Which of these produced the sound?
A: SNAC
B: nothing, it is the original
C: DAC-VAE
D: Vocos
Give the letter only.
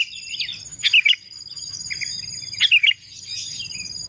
B